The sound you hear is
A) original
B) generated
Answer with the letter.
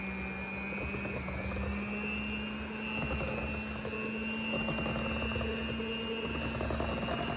A